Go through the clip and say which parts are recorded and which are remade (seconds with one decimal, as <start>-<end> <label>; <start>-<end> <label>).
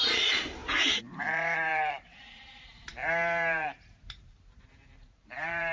0.0-5.7 remade